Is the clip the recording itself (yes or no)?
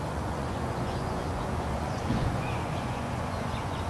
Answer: no